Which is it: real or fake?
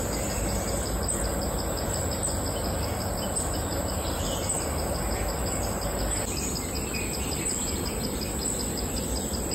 real